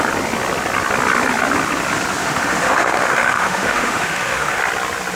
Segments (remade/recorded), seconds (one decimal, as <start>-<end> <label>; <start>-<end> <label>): 0.0-2.2 recorded; 2.2-4.6 remade; 4.6-5.2 recorded